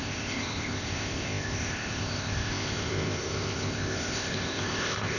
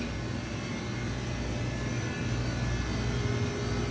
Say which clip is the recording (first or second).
second